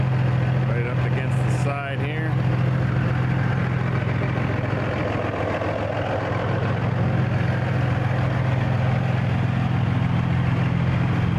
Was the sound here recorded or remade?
recorded